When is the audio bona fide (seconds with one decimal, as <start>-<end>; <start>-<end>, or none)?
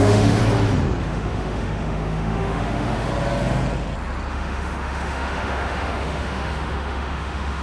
0.4-1.0; 3.1-4.3